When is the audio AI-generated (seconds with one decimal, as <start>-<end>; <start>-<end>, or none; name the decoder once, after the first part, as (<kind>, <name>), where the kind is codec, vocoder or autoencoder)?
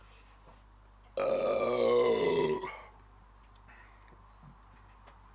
none